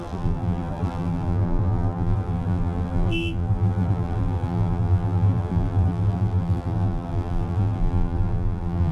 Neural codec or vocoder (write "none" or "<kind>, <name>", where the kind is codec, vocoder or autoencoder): vocoder, BigVGAN v2